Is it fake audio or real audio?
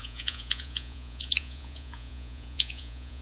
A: fake